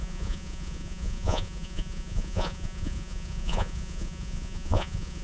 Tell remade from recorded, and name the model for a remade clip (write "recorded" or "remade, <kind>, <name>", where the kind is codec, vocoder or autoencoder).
remade, vocoder, Vocos